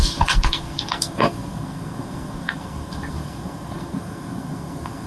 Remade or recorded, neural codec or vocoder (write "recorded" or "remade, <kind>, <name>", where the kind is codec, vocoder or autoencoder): remade, codec, SNAC